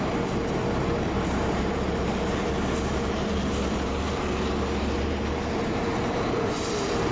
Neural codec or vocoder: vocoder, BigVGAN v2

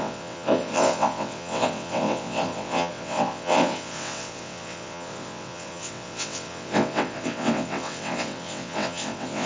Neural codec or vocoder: vocoder, WaveNeXt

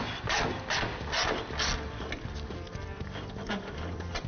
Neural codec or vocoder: none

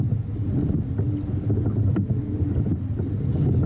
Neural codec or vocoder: none